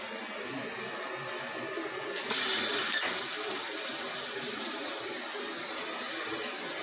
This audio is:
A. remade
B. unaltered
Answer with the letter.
B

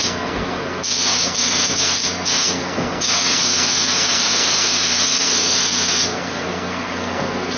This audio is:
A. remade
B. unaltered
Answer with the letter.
A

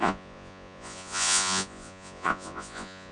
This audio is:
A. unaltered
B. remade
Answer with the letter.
B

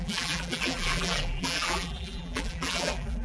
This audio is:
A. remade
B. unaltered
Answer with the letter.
A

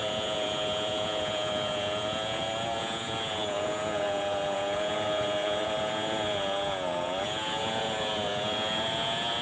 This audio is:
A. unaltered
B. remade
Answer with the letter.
B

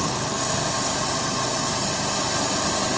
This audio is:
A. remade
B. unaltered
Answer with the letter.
B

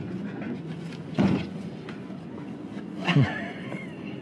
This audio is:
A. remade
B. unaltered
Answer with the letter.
A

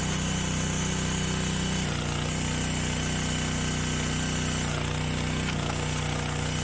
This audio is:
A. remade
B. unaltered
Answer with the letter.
B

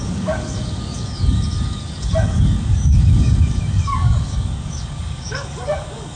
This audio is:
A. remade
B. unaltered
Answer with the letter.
A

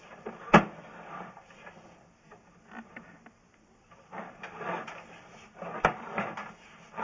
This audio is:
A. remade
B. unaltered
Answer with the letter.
A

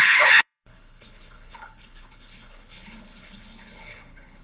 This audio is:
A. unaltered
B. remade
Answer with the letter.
B